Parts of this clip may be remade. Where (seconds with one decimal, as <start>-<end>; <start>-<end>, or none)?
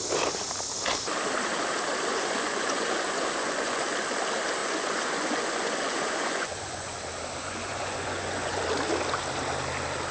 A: 2.1-3.8; 4.6-7.0; 7.4-8.6